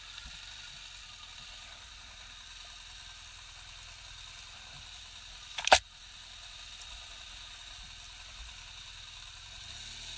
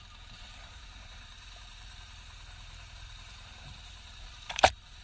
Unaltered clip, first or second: first